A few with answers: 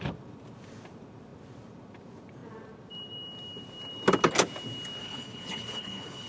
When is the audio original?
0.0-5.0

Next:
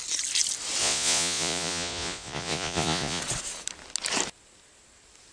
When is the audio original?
0.0-0.8; 3.2-5.3

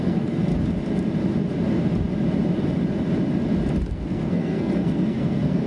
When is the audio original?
0.5-3.9

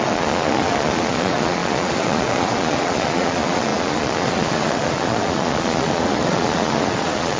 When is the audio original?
none

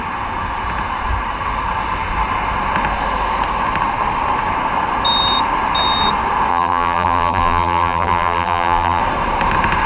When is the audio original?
0.0-6.5; 9.0-9.9

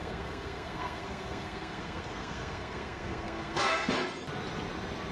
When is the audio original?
3.9-5.1

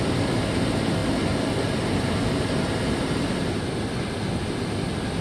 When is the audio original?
0.0-5.2

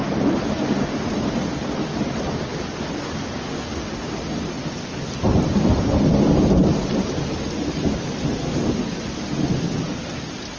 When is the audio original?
1.8-10.6